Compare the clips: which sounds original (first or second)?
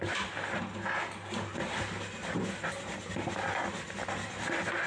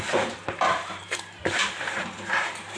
first